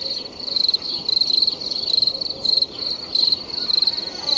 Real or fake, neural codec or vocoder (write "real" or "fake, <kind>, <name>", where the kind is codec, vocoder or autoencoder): real